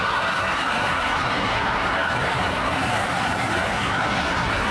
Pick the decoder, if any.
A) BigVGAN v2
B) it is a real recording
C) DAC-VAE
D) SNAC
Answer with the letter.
D